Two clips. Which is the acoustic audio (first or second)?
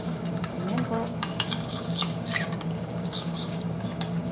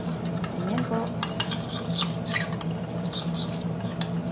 second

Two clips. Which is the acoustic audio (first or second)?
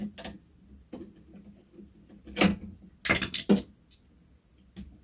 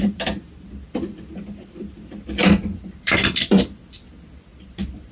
first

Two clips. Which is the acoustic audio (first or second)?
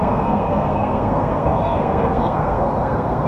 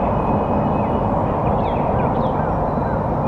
second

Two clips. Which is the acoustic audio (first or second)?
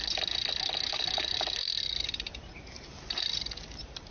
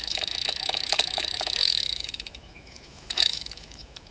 first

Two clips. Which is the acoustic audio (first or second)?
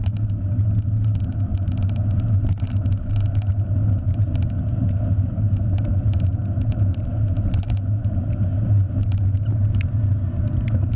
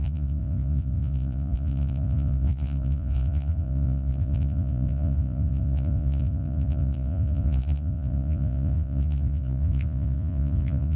first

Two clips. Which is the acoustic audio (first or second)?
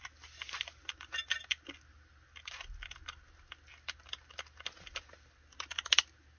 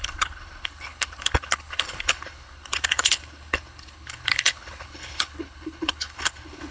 first